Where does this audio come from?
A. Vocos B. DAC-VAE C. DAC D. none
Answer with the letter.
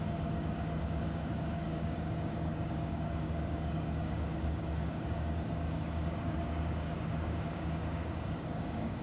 C